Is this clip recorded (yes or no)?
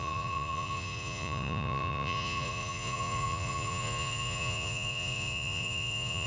no